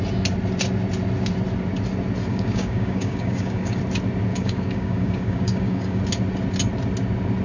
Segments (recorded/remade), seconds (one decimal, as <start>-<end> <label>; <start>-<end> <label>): 0.0-2.3 recorded; 2.3-3.8 remade; 3.8-4.3 recorded; 4.3-6.0 remade; 6.0-7.4 recorded